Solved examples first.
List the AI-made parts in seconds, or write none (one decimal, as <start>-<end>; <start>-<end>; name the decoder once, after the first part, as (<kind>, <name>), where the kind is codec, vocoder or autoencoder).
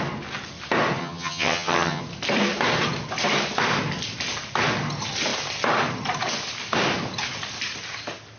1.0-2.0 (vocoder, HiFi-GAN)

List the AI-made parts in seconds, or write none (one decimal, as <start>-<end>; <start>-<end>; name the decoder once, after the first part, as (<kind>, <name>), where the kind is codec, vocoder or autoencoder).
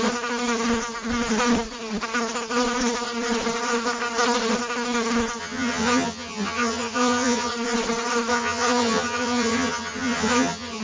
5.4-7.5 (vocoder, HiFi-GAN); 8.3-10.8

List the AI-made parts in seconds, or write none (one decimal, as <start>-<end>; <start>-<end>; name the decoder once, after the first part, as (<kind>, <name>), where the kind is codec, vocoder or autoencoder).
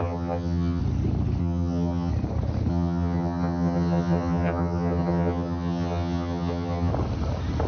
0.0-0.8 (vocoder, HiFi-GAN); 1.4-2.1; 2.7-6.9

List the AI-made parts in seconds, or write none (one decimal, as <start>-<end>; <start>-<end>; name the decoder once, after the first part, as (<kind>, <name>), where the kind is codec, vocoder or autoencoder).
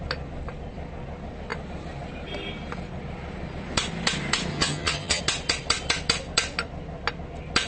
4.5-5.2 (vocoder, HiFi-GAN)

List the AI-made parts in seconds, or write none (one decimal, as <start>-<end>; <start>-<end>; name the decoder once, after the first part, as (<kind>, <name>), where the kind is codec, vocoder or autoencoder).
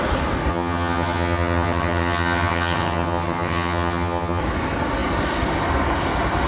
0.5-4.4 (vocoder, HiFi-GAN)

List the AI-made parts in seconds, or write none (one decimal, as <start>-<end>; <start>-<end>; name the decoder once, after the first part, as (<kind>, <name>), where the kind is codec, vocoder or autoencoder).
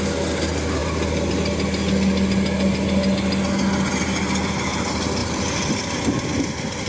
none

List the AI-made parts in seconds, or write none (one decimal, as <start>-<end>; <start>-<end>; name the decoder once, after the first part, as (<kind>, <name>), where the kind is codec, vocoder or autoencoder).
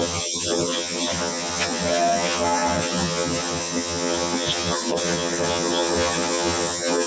0.0-7.1 (vocoder, HiFi-GAN)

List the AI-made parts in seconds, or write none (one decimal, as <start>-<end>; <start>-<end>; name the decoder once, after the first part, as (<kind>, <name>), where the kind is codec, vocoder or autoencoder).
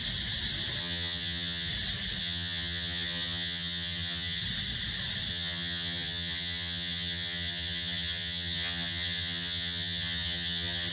0.8-1.7 (vocoder, HiFi-GAN); 2.2-4.4; 5.3-10.9